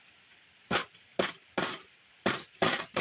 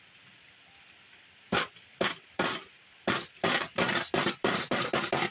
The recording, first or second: second